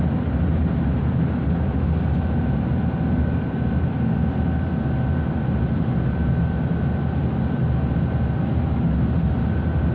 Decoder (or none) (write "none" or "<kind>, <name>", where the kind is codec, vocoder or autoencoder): none